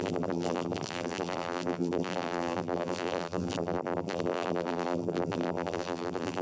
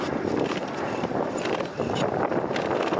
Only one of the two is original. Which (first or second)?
second